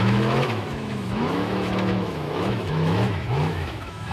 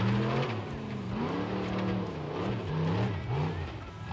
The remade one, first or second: first